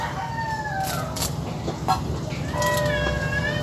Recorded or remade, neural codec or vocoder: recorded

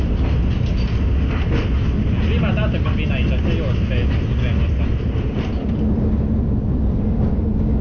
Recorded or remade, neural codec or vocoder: recorded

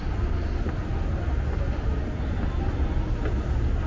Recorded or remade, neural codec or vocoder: recorded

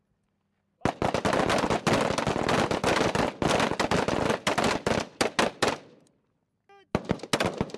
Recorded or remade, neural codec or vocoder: recorded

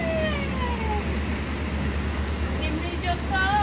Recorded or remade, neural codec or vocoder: recorded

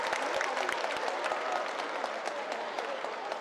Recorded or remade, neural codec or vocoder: recorded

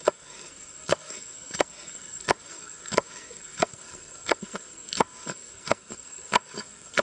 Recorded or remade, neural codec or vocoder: remade, codec, SNAC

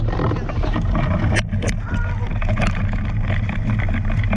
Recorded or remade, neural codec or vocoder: recorded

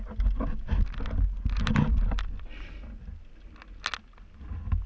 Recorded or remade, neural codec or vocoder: recorded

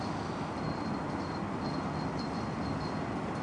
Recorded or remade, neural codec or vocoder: recorded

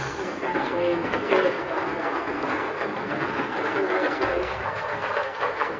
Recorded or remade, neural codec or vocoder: remade, codec, SNAC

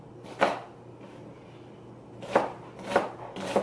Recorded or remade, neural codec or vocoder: recorded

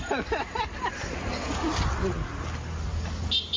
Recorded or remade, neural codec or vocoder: recorded